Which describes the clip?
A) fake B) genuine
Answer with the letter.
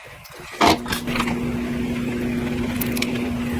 B